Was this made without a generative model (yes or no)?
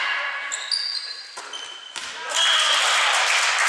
yes